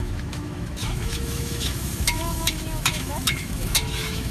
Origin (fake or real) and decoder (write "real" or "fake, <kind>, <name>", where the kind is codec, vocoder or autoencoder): fake, autoencoder, DAC-VAE